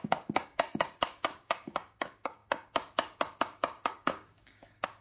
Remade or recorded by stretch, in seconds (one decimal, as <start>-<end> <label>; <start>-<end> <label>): 0.0-5.0 remade